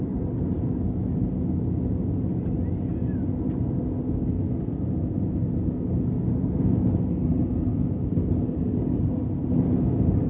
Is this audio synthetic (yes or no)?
no